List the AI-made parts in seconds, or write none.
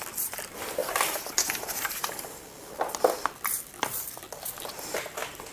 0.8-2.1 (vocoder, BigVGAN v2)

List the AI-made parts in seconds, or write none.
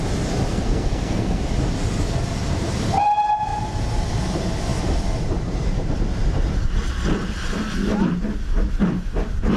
0.5-1.4 (codec, SNAC)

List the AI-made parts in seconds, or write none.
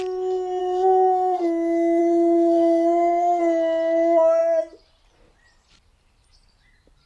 0.6-1.4 (codec, SNAC); 2.0-3.4